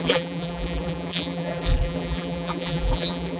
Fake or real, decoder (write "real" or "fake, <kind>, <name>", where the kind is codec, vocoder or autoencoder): fake, vocoder, BigVGAN v2